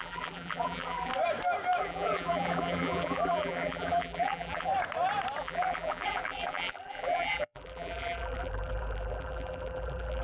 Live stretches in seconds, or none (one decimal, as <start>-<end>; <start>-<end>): 1.1-1.8; 4.7-5.4